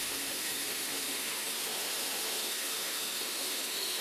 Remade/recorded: remade